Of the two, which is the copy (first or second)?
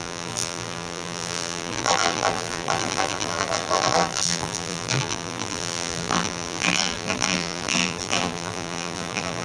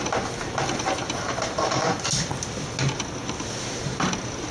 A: first